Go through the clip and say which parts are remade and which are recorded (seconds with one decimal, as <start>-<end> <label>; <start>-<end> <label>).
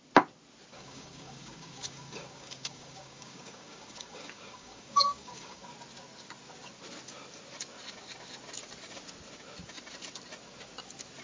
0.0-0.7 recorded; 0.7-5.7 remade; 5.7-11.2 recorded